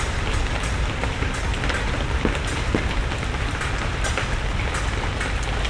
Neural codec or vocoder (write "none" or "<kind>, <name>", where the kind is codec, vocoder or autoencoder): none